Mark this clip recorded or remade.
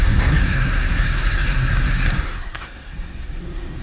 remade